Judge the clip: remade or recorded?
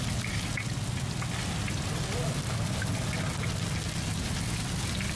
recorded